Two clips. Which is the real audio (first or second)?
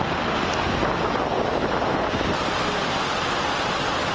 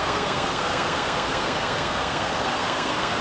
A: first